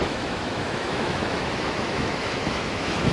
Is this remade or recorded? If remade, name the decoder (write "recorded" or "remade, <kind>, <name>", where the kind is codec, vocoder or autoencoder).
remade, autoencoder, DAC-VAE